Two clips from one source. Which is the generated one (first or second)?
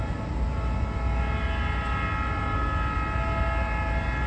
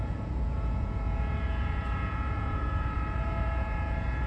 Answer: second